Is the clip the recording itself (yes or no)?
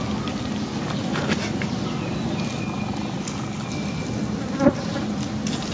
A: yes